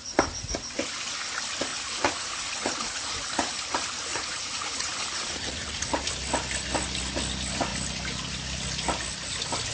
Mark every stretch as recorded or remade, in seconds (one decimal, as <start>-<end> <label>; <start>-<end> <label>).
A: 0.0-1.7 recorded; 1.7-3.5 remade; 3.5-4.1 recorded; 4.1-6.1 remade; 6.1-9.7 recorded